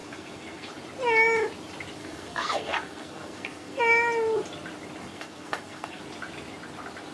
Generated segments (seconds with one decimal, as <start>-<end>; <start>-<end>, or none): 0.0-0.7; 2.0-3.8; 5.1-6.0